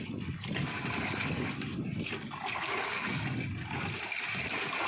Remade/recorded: recorded